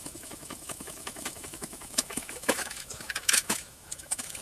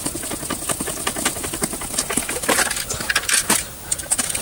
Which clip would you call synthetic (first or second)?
first